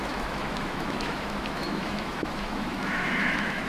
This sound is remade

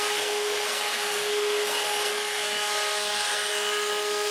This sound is remade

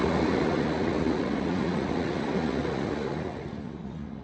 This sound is remade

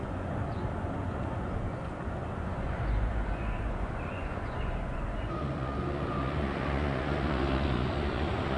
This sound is remade